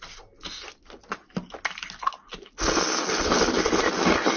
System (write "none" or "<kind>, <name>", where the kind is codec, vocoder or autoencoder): none